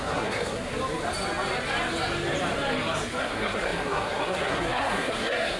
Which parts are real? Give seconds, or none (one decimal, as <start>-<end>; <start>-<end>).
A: 0.7-3.2